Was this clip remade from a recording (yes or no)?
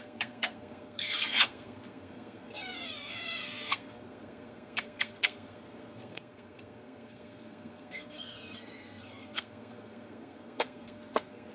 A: yes